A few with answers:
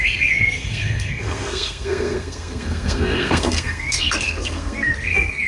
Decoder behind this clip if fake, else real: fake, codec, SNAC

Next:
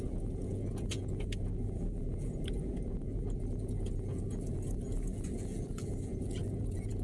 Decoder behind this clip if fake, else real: fake, vocoder, Vocos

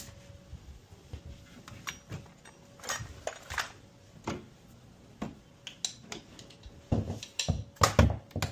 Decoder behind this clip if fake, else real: real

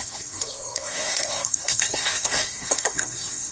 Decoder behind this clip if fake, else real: fake, codec, SNAC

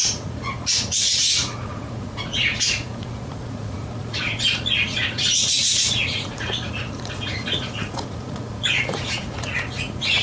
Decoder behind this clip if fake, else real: fake, vocoder, Vocos